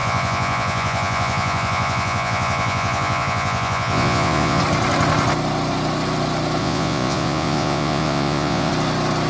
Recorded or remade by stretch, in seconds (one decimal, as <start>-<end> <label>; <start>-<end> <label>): 0.0-4.6 remade; 4.6-6.6 recorded; 6.6-8.7 remade; 8.7-9.3 recorded